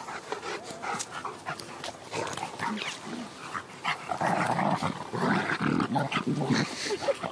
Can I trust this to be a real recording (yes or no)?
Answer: yes